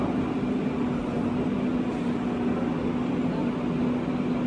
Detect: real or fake real